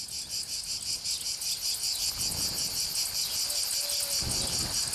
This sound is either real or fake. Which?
real